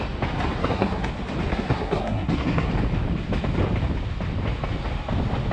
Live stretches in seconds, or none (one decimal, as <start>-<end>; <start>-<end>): 0.0-0.6; 1.1-1.5; 2.7-5.5